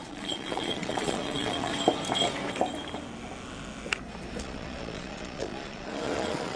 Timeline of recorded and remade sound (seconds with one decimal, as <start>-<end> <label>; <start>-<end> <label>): 0.0-1.7 remade; 1.7-4.4 recorded; 4.4-6.6 remade